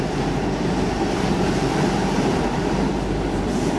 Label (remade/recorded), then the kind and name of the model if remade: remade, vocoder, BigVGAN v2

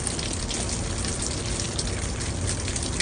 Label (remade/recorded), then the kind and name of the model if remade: recorded